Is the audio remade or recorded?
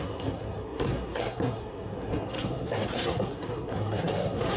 remade